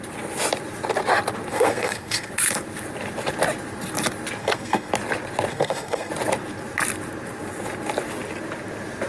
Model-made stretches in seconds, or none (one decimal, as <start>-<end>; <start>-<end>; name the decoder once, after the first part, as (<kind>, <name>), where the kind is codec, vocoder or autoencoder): 1.5-2.3 (codec, SNAC); 4.4-4.9; 5.5-6.1